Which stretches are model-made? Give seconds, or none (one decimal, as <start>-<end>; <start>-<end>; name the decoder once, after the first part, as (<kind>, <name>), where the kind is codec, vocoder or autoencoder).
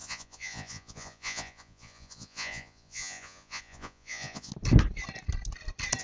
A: 0.0-4.5 (vocoder, Vocos)